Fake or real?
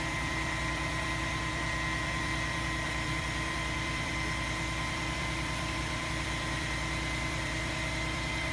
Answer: fake